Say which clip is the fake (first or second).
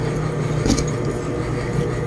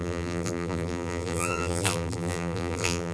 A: second